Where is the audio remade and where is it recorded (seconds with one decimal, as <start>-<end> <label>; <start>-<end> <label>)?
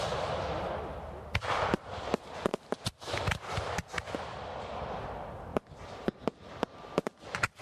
0.0-7.6 recorded